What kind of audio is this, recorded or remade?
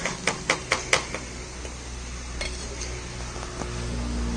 recorded